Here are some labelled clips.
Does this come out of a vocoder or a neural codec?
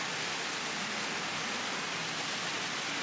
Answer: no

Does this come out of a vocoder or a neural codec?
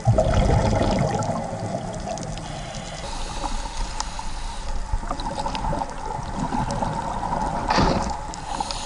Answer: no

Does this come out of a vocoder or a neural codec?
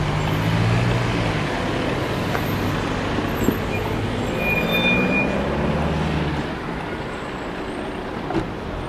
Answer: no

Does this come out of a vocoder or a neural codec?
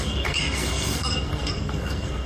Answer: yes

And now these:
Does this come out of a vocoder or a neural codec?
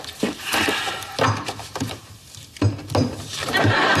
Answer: no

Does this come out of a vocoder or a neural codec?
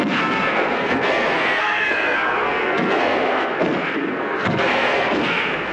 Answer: yes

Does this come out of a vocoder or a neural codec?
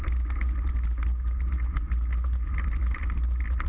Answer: no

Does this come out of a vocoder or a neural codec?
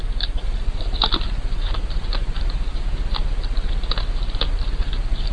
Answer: no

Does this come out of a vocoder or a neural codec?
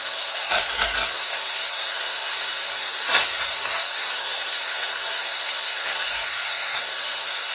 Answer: yes